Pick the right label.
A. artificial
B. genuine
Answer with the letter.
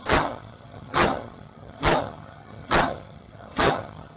A